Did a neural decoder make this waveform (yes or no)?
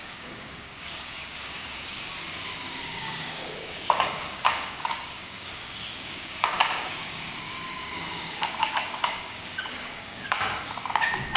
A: yes